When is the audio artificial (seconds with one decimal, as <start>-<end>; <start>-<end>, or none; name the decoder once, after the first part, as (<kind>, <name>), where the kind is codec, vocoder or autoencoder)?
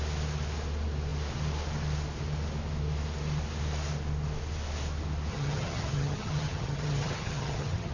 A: 5.3-7.9 (vocoder, HiFi-GAN)